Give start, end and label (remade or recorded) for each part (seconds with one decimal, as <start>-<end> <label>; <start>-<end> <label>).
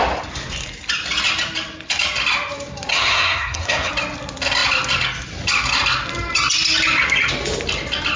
0.0-2.9 recorded; 2.9-3.9 remade; 3.9-8.2 recorded